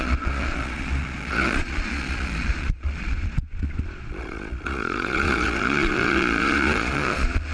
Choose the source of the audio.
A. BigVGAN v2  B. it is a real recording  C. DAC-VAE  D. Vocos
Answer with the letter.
D